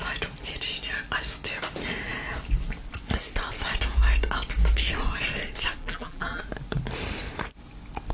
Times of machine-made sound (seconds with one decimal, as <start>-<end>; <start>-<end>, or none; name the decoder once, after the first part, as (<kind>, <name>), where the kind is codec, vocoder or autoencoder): 5.8-6.4 (vocoder, BigVGAN v2)

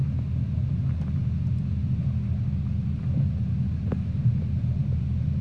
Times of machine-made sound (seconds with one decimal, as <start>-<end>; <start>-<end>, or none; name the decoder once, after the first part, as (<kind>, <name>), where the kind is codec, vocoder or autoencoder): none

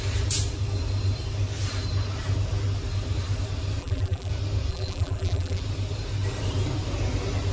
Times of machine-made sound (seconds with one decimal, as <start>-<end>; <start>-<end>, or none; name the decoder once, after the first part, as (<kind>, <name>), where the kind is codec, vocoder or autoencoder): 3.8-4.3 (vocoder, BigVGAN v2); 4.7-5.6

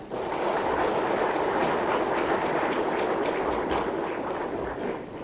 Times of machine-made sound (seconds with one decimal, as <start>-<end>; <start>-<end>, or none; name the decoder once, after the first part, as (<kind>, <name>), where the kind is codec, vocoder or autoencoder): 1.6-3.6 (vocoder, BigVGAN v2)